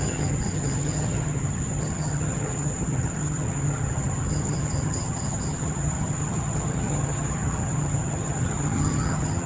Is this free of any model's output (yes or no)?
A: no